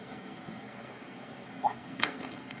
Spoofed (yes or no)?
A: yes